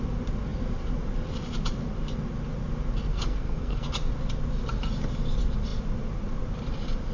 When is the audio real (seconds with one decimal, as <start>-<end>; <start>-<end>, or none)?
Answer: 0.0-3.1; 3.9-7.1